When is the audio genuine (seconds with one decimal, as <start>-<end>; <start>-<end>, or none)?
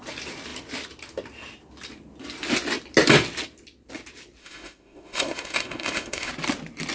0.0-4.4; 6.3-6.9